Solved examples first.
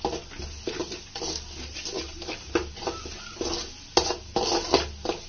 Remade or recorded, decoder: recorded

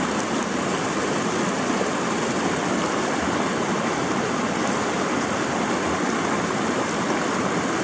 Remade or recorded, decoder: recorded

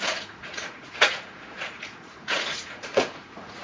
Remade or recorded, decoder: remade, vocoder, Vocos